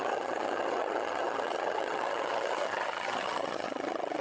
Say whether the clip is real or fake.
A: fake